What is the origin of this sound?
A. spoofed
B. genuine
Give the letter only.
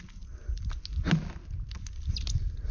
B